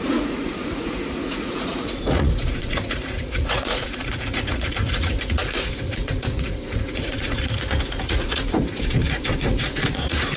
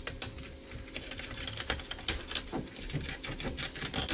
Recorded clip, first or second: second